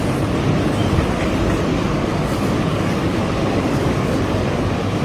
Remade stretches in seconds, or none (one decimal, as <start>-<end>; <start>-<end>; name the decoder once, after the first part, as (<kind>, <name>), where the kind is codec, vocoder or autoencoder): 1.7-5.0 (codec, DAC)